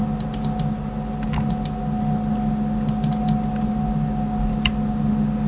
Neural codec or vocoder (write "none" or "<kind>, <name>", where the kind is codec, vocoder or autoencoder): none